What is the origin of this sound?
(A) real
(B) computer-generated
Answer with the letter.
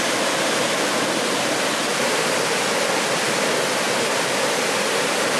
A